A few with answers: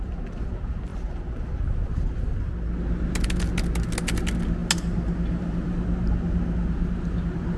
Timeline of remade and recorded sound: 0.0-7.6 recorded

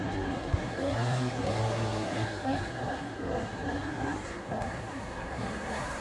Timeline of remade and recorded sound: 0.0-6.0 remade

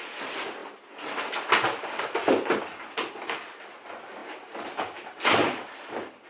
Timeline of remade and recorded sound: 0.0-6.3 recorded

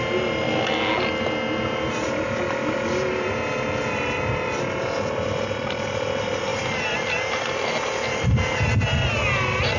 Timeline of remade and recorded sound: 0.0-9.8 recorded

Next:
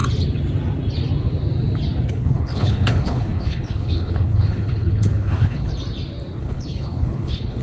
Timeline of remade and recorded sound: 0.0-2.1 recorded; 2.1-5.7 remade; 5.7-6.4 recorded; 6.4-7.6 remade